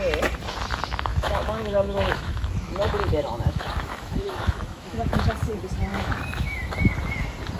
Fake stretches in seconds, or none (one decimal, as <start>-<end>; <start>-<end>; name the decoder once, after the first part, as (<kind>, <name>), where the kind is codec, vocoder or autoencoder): 1.1-5.3 (autoencoder, DAC-VAE); 5.9-6.7